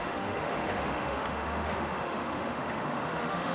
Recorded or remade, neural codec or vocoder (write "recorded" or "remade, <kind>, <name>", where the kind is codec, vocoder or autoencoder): remade, autoencoder, DAC-VAE